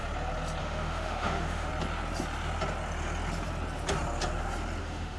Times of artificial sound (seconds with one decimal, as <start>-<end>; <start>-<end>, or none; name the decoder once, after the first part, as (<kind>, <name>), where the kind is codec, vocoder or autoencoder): 0.6-1.7 (autoencoder, DAC-VAE); 4.8-5.2